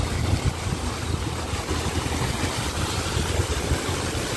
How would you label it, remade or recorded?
recorded